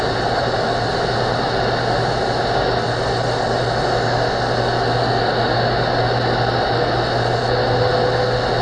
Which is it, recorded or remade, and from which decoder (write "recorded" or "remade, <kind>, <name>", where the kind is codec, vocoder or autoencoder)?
recorded